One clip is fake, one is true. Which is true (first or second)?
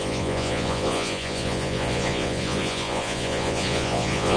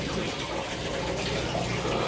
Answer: second